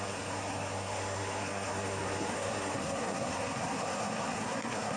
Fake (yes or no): yes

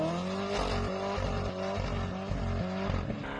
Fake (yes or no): no